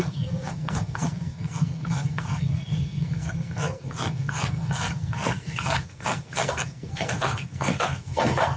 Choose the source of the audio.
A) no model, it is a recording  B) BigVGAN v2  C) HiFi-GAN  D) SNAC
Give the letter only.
D